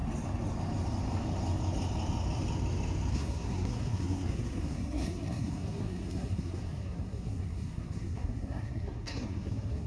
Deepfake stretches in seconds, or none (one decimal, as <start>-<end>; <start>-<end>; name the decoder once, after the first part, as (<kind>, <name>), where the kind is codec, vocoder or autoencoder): 3.1-9.9 (codec, SNAC)